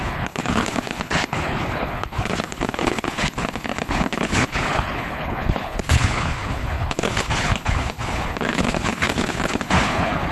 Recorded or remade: remade